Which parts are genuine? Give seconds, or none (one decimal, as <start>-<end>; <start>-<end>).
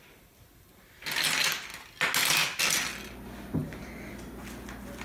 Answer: 0.0-5.0